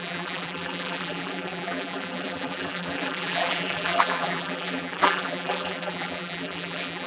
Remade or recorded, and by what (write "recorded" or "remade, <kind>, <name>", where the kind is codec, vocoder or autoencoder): remade, vocoder, BigVGAN v2